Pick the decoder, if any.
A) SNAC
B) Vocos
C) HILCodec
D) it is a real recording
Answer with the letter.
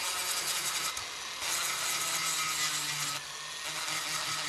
D